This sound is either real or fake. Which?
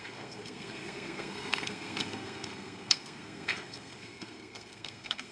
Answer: fake